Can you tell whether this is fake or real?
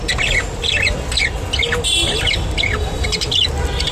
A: real